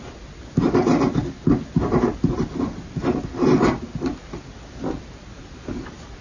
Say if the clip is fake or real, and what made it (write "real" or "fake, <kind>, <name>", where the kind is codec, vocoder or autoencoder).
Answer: real